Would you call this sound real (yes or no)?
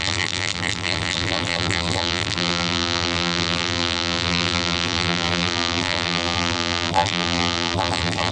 no